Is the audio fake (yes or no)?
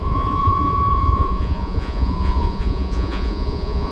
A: yes